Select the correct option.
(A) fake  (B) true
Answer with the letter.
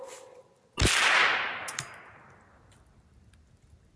B